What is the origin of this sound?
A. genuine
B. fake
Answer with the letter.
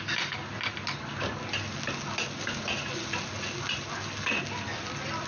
A